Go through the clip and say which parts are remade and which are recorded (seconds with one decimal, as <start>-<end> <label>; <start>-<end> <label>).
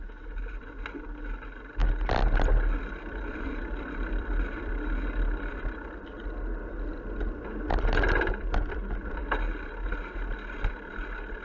0.0-1.8 recorded; 1.8-5.6 remade; 5.6-11.4 recorded